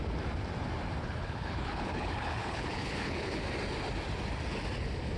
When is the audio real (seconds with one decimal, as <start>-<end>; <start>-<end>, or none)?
0.0-1.0; 3.4-5.2